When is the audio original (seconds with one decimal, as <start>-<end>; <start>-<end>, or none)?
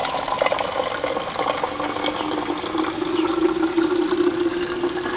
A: 0.0-5.2